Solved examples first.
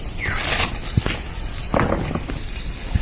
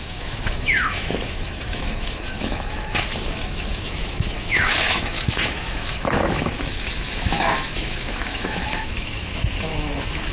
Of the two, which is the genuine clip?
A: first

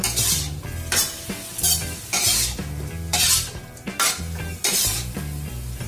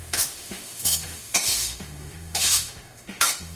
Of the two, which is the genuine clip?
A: first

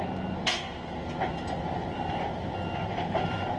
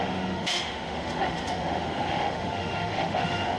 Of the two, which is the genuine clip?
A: first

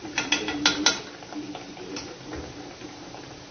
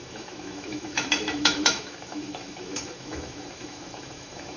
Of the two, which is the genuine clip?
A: first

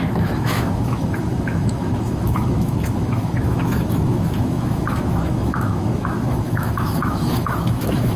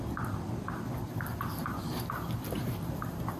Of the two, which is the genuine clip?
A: second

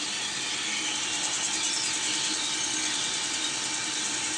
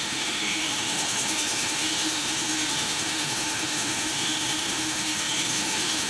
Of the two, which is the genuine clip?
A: first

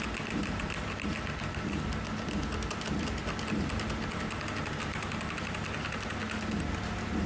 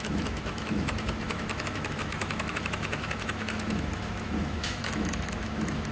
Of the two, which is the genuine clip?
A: first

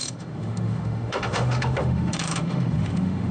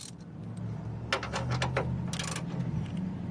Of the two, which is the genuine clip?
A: second